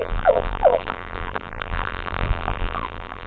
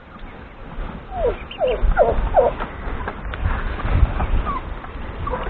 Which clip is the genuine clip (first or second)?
second